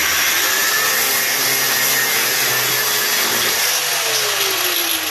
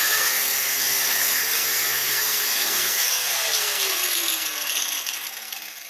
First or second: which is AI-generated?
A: second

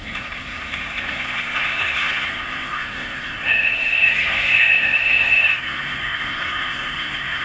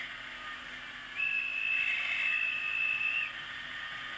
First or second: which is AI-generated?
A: first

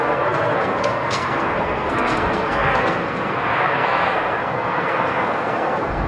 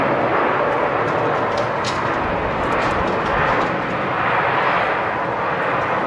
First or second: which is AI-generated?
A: first